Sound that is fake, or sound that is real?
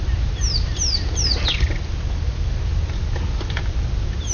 real